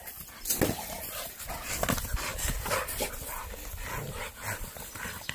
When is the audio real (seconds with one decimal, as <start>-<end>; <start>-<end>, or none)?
0.0-5.3